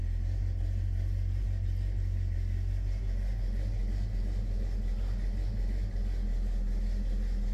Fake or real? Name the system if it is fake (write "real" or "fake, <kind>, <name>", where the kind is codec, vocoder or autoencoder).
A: real